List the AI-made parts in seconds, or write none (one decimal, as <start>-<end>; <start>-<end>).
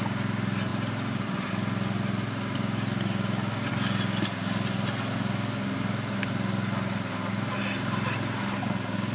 none